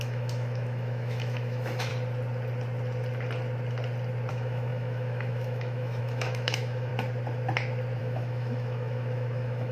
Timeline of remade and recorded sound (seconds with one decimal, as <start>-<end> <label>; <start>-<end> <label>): 0.0-1.9 remade; 1.9-4.3 recorded; 4.3-6.9 remade; 6.9-8.0 recorded; 8.0-9.7 remade